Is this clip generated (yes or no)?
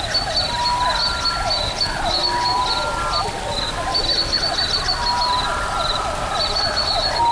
no